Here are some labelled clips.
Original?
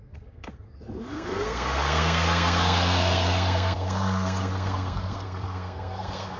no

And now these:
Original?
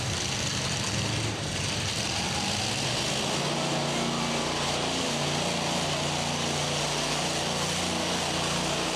yes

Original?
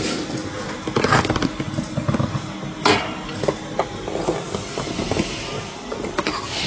yes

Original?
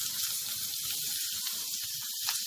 yes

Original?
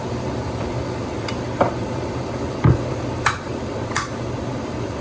no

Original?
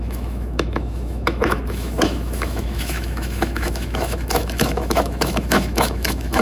no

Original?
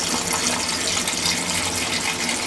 yes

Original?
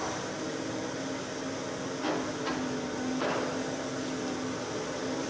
yes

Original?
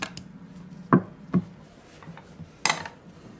yes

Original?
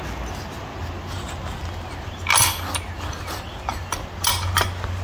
yes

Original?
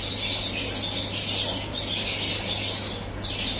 yes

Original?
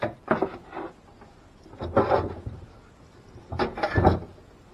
yes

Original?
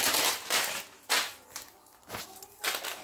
yes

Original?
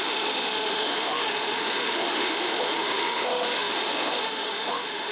no